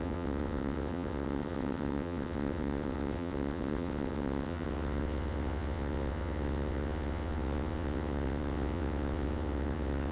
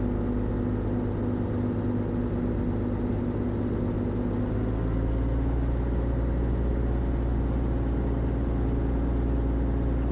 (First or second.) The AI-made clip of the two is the first